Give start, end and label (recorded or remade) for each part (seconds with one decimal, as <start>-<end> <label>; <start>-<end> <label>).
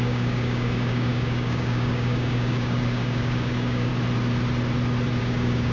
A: 0.0-3.9 remade; 3.9-5.2 recorded; 5.2-5.7 remade